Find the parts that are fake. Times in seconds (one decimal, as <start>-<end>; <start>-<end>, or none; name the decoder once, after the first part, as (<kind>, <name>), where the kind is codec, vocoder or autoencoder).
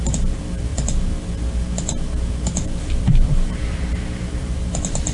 0.0-5.1 (vocoder, BigVGAN v2)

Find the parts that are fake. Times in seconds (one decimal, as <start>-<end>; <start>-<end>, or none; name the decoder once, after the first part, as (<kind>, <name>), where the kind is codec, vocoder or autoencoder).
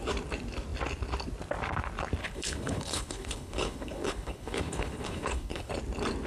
2.2-5.7 (codec, HILCodec)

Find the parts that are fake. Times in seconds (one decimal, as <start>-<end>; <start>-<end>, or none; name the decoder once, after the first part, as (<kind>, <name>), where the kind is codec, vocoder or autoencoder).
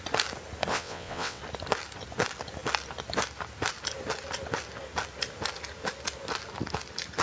0.7-1.4 (vocoder, WaveNeXt)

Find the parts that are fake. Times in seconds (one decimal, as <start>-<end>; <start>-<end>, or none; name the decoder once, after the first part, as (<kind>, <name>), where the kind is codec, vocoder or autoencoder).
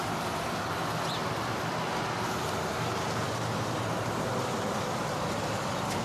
none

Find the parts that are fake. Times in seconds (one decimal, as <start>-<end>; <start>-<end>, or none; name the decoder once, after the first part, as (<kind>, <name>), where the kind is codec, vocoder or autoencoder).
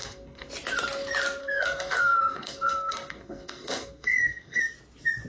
0.0-0.5 (codec, SNAC); 1.4-4.6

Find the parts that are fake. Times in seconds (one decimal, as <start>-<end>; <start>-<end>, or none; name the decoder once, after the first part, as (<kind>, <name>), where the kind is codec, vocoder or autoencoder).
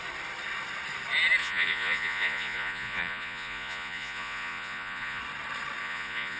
1.4-5.2 (vocoder, Vocos); 5.8-6.4